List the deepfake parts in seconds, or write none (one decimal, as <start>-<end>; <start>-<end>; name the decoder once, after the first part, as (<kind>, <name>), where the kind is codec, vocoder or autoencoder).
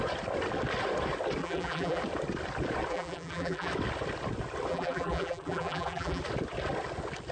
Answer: 1.4-2.0 (vocoder, BigVGAN v2); 2.9-3.7; 4.7-6.2